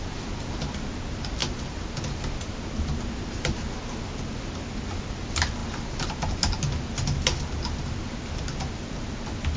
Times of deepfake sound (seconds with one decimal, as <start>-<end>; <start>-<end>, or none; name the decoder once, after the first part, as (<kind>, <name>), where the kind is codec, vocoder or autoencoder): none